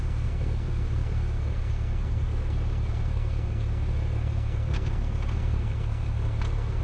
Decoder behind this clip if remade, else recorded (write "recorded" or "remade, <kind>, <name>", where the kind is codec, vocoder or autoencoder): remade, codec, SNAC